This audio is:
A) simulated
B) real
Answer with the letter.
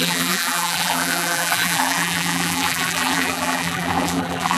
A